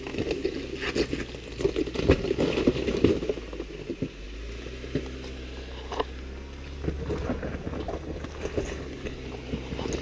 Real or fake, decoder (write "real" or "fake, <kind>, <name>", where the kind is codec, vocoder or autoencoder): real